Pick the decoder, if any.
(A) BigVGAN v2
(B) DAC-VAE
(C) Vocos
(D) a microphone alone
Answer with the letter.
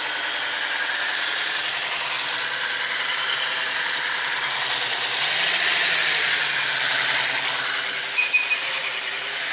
D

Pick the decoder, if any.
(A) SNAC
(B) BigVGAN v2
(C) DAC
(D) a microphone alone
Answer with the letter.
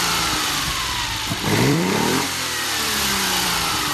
B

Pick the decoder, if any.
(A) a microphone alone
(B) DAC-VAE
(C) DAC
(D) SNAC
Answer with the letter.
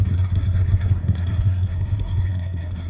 D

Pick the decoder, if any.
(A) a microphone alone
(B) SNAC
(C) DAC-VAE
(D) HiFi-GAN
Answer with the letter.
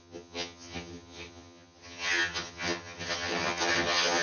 D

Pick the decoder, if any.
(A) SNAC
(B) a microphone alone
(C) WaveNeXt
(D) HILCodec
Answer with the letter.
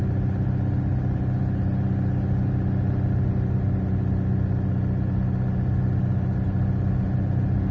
B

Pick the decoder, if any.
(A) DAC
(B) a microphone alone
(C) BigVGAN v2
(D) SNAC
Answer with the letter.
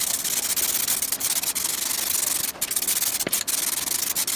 B